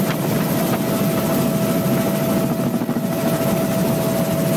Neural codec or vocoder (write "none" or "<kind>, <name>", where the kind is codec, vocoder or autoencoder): none